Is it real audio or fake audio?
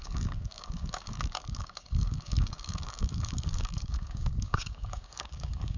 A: fake